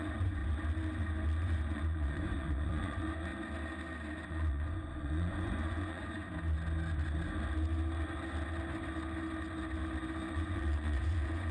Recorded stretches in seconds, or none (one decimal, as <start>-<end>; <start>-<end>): 0.4-1.4; 3.3-4.3; 6.2-10.3

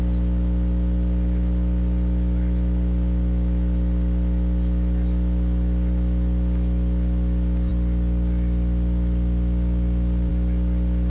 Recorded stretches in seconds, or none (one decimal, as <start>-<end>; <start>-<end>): 0.0-11.1